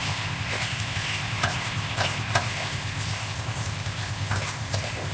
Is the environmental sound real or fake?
fake